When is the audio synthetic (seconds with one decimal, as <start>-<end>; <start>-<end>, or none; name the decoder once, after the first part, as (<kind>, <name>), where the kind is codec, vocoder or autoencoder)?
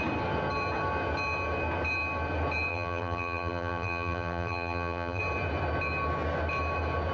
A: 2.7-5.2 (vocoder, BigVGAN v2)